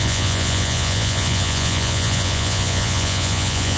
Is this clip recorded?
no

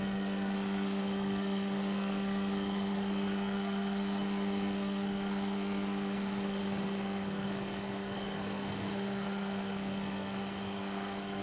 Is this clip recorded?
no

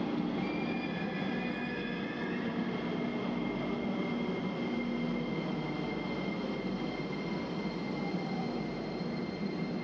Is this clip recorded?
yes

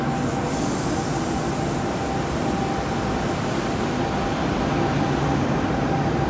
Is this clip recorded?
yes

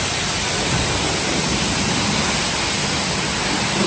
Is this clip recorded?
yes